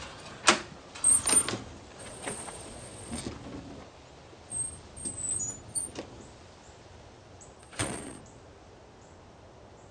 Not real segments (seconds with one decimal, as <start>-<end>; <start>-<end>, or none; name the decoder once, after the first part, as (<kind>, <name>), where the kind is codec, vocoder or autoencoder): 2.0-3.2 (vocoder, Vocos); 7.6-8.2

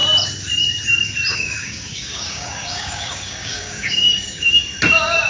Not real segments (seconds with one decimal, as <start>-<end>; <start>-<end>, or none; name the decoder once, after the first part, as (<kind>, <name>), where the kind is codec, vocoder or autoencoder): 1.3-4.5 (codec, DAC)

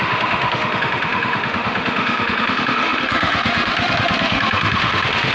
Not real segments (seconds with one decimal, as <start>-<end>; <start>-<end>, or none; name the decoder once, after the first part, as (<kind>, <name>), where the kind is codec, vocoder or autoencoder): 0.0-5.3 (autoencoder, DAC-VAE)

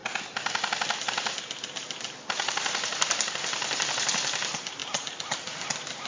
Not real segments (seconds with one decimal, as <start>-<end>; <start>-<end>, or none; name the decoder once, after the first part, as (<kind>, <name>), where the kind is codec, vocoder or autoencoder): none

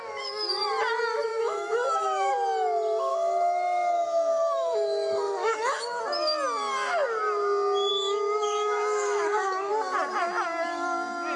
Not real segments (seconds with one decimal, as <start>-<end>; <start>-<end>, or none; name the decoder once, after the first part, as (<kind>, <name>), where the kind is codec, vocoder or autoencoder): 1.3-2.3 (autoencoder, DAC-VAE); 3.1-6.0; 7.9-9.7

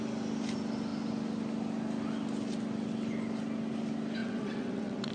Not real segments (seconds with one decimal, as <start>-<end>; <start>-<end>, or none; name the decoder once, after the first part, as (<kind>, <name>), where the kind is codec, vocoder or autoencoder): 4.2-5.1 (vocoder, WaveNeXt)

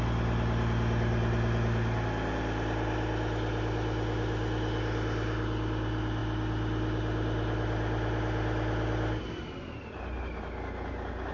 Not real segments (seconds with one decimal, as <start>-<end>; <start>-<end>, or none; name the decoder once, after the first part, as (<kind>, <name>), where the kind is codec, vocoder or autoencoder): none